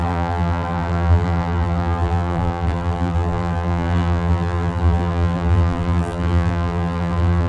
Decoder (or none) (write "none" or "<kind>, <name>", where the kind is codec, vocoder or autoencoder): vocoder, BigVGAN v2